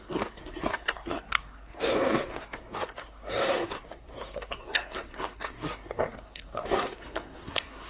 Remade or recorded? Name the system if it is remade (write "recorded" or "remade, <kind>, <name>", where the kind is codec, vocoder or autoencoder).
remade, codec, SNAC